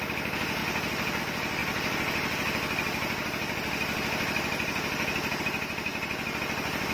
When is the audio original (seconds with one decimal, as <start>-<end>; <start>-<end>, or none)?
0.0-6.9